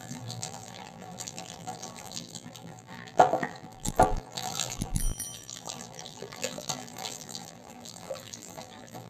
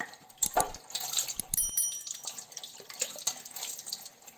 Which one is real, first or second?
second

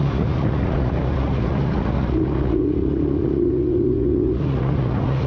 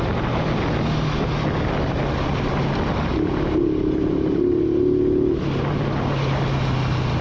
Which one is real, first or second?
second